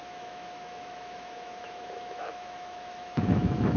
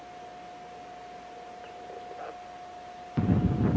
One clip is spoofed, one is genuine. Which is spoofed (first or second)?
first